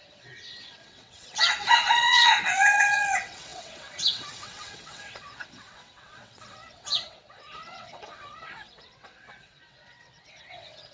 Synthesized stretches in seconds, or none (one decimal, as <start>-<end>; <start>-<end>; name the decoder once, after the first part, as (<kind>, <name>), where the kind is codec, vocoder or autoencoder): 0.0-10.9 (vocoder, WaveNeXt)